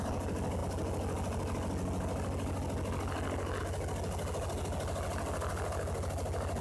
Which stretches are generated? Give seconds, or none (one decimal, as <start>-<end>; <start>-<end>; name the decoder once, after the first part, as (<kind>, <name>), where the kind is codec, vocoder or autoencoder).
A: none

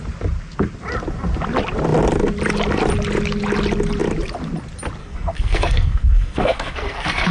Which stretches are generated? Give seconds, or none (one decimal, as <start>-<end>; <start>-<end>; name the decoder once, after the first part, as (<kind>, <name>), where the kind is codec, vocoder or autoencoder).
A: 5.0-7.3 (codec, SNAC)

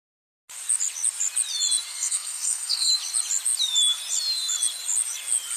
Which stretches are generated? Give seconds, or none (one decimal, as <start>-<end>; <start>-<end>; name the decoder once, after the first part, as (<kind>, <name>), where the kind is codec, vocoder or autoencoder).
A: 1.9-2.9 (codec, SNAC)

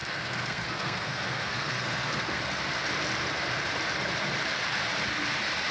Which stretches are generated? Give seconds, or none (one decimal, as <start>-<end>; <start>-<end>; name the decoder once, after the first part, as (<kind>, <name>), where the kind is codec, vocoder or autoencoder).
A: 0.0-2.4 (codec, SNAC)

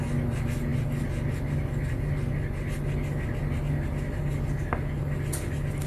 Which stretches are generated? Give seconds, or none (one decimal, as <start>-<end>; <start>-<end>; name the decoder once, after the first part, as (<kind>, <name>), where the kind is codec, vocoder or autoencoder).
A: none

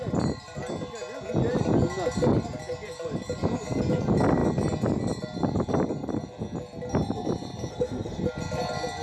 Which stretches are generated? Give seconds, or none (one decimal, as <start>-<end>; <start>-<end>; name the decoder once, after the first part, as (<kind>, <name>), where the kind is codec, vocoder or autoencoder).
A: 7.7-8.2 (codec, SNAC)

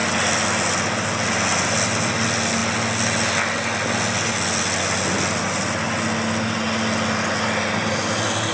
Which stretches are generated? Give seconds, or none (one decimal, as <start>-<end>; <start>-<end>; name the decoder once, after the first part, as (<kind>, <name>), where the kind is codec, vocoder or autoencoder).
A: none